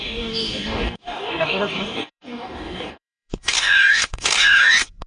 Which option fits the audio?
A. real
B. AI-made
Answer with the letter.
B